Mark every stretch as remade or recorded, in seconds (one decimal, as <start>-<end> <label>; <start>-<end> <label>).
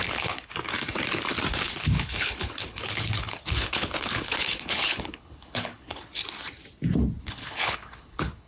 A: 0.0-0.5 remade; 0.5-1.6 recorded; 1.6-6.2 remade; 6.2-7.2 recorded; 7.2-8.5 remade